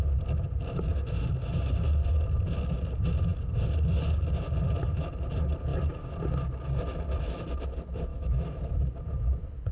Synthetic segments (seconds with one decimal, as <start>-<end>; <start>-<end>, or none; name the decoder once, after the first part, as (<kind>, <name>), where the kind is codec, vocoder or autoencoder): 8.1-8.9 (autoencoder, DAC-VAE)